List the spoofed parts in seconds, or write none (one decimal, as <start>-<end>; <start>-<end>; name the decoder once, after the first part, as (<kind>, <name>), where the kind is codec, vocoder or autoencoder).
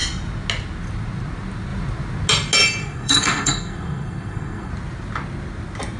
2.8-4.7 (codec, SNAC)